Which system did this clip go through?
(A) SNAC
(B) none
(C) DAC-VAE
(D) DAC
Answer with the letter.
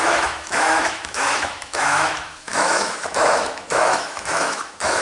C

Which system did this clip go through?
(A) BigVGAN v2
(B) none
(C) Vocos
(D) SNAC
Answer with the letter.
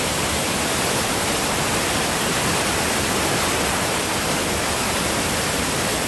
B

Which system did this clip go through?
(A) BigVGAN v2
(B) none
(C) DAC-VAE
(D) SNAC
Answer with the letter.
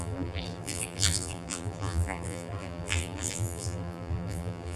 A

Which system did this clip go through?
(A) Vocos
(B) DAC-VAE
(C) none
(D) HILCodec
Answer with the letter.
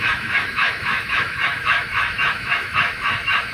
B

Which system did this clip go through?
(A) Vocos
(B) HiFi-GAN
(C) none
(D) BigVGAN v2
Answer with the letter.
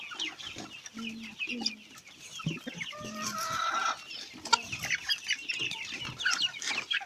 C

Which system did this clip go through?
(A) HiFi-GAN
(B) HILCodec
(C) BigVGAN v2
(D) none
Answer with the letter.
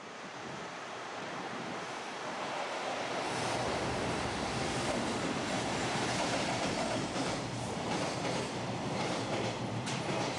C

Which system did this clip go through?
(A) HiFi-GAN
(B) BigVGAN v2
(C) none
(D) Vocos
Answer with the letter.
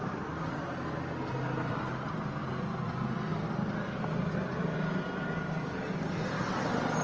C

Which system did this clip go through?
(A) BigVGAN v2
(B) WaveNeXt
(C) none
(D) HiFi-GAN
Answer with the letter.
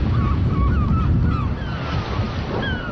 C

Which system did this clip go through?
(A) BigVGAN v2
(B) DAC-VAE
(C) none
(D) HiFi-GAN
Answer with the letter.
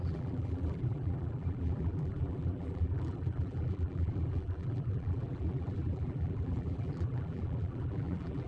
A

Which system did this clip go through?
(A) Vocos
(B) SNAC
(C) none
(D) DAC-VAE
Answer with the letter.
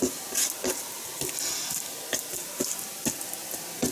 C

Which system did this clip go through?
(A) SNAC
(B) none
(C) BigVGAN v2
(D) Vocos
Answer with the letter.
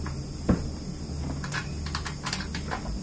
B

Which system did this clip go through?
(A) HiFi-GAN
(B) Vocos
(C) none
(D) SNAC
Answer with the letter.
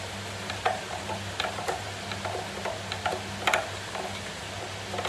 C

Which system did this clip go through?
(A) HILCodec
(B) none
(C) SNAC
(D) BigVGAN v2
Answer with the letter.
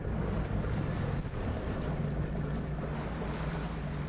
B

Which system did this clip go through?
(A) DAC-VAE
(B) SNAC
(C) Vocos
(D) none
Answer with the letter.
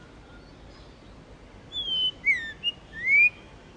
D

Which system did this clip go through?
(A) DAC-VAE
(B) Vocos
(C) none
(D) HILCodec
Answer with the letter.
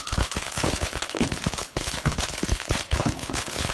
D